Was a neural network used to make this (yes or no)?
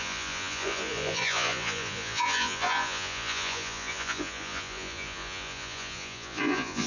yes